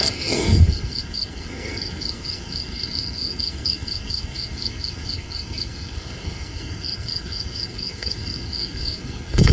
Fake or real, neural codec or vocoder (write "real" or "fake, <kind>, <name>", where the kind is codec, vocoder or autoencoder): fake, codec, SNAC